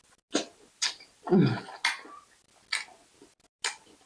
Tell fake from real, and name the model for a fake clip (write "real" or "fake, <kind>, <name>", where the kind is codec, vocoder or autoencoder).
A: real